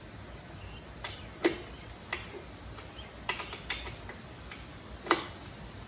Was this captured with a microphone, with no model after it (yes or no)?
yes